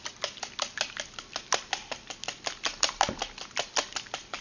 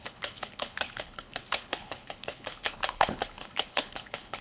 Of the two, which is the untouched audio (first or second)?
first